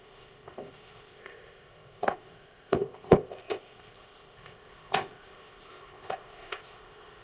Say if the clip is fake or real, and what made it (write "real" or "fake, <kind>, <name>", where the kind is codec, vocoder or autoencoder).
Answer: fake, codec, ZipCodec